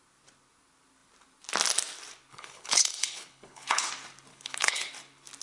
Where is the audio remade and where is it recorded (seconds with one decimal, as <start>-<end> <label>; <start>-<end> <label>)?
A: 0.0-2.3 recorded; 2.3-3.9 remade; 3.9-4.3 recorded; 4.3-4.9 remade; 4.9-5.4 recorded